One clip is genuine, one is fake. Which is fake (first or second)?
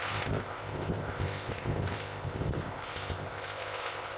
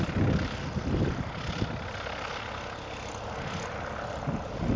first